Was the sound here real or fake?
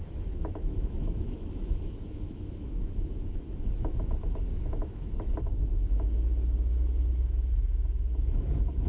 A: fake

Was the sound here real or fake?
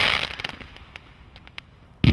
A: real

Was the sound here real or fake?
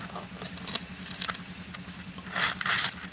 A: real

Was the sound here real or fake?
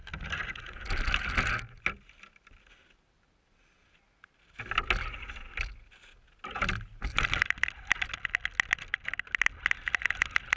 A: real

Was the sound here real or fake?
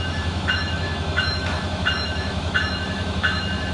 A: fake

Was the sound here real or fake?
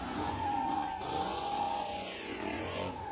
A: fake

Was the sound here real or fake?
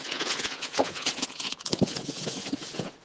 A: fake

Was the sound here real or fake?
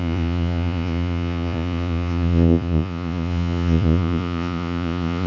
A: fake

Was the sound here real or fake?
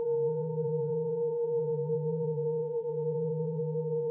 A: fake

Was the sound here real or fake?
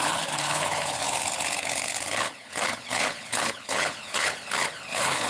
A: fake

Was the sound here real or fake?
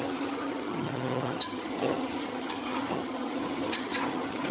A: fake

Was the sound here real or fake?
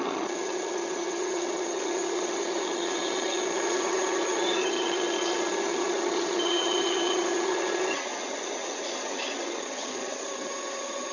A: fake